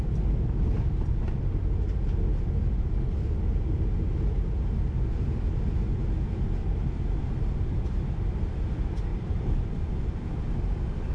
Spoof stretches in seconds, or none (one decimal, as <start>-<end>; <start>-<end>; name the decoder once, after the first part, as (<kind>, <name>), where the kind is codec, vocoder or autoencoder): 9.1-9.8 (vocoder, BigVGAN v2)